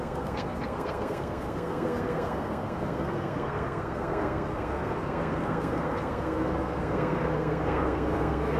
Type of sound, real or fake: fake